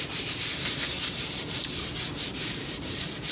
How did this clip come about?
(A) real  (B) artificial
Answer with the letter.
B